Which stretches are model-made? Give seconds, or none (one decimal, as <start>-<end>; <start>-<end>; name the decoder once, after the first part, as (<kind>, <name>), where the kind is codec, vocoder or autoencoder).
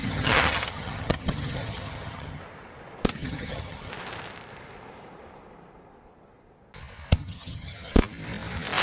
0.0-2.4 (vocoder, HiFi-GAN); 3.2-3.9; 7.2-7.9